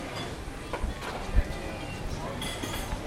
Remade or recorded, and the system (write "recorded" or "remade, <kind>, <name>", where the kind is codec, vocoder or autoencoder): recorded